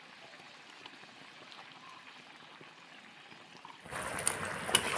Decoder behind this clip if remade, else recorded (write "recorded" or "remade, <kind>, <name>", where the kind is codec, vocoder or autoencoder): recorded